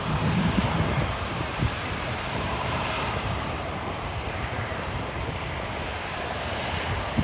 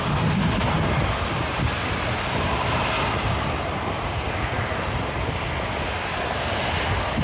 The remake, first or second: first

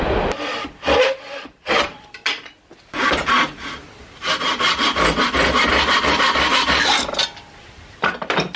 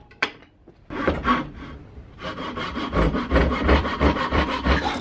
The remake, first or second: second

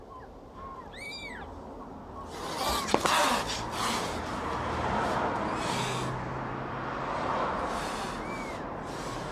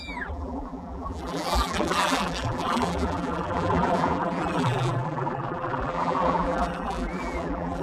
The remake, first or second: second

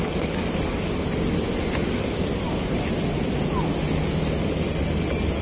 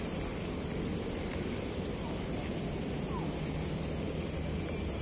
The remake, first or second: second